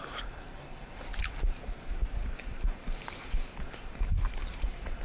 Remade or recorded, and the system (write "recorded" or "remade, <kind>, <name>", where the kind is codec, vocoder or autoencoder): remade, vocoder, BigVGAN v2